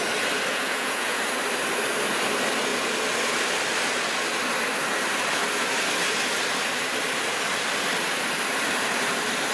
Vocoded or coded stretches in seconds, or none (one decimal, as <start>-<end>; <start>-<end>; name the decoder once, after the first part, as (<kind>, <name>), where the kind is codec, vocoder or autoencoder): 0.5-1.2 (vocoder, Vocos)